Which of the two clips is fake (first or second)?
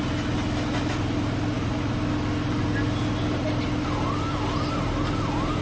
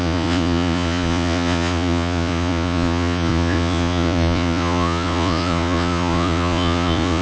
second